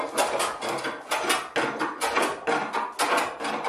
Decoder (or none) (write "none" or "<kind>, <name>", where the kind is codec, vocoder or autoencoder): none